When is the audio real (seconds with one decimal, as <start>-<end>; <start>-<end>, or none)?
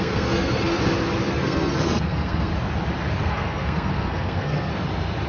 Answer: 0.8-1.3; 2.5-3.2; 4.7-5.3